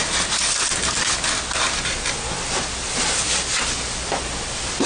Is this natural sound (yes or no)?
yes